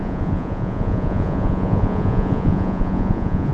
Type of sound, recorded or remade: remade